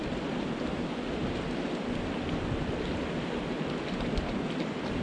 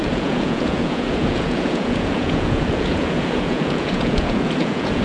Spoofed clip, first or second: second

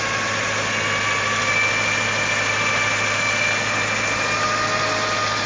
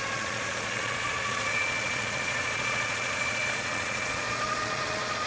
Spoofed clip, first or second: second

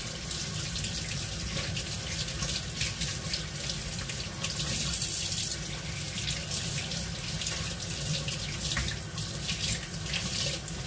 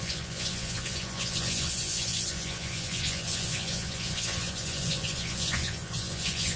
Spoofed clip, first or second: second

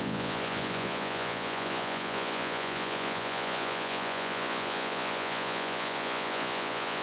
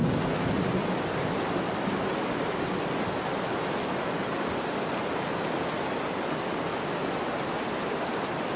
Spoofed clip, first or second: first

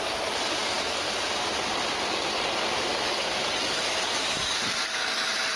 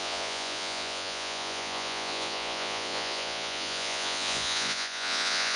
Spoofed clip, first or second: second